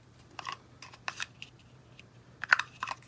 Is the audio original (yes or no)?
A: no